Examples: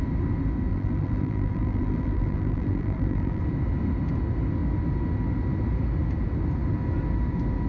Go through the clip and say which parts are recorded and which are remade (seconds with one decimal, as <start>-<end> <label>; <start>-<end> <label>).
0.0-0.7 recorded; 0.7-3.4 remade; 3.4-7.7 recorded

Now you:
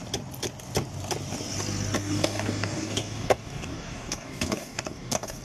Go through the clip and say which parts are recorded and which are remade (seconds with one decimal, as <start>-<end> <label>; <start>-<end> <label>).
0.0-2.0 recorded; 2.0-5.4 remade

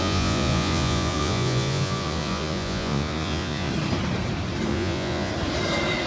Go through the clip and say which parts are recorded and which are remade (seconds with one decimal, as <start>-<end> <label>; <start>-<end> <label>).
0.0-3.7 remade; 3.7-4.7 recorded; 4.7-5.3 remade; 5.3-6.1 recorded

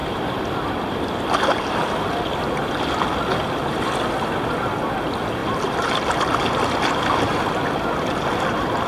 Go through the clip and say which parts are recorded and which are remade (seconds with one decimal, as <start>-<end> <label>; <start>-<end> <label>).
0.0-8.9 recorded